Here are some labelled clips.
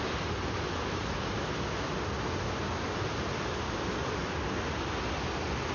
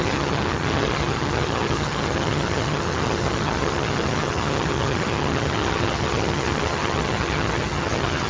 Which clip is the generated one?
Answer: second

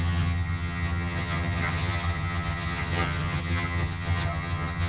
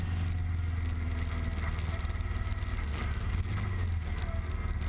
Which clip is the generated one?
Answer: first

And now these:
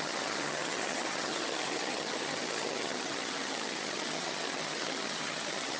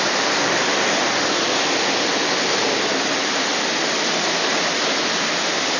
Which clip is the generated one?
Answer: first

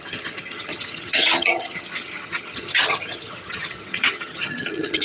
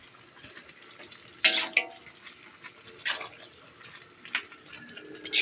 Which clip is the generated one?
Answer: first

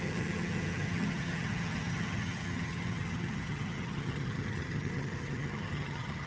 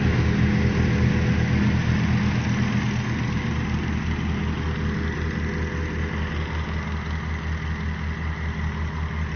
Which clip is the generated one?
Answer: first